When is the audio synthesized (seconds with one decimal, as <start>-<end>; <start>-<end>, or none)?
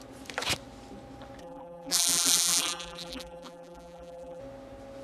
1.4-4.4